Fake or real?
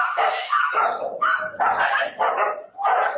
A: real